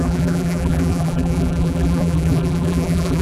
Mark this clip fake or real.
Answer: fake